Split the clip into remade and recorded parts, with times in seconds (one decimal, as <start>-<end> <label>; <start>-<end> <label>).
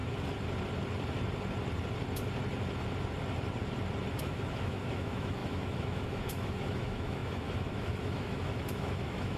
0.0-4.2 recorded; 4.2-9.4 remade